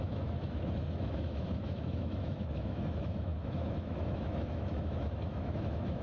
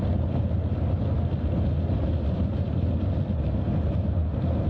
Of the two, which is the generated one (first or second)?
first